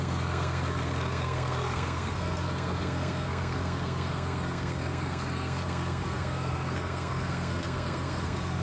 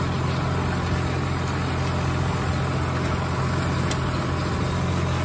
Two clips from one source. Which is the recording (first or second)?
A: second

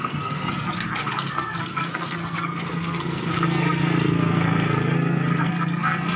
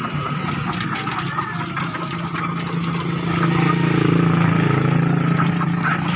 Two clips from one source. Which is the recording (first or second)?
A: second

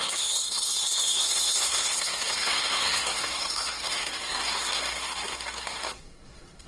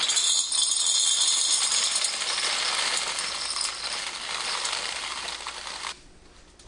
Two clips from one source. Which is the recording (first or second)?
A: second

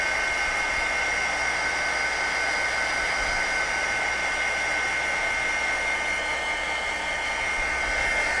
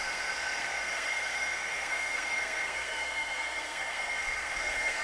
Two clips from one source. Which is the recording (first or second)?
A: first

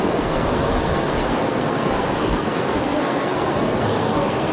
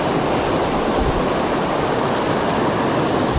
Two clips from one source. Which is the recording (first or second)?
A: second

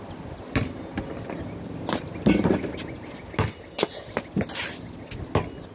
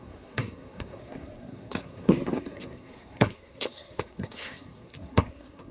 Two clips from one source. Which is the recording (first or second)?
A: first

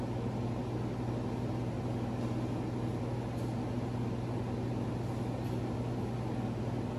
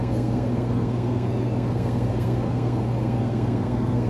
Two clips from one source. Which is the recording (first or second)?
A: first